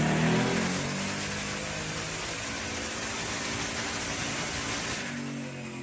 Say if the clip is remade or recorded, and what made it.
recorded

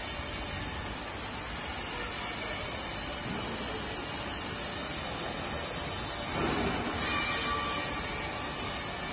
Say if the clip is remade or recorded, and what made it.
recorded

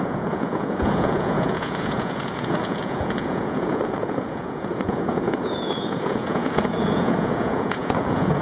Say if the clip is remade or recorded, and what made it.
remade, vocoder, Vocos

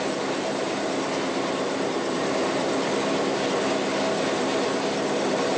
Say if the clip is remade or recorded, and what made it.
recorded